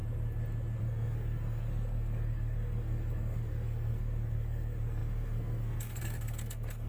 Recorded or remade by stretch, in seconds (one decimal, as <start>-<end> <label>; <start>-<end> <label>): 0.0-0.8 recorded; 0.8-6.9 remade